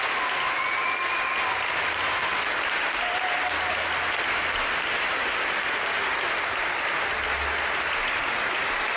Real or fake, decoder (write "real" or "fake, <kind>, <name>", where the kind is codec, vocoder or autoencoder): real